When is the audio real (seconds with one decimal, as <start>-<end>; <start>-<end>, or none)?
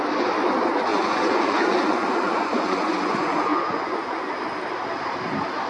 0.0-0.9; 4.3-5.7